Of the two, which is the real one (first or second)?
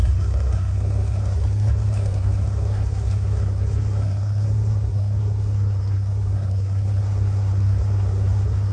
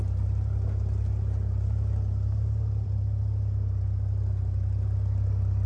second